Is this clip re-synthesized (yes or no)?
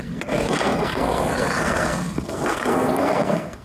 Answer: yes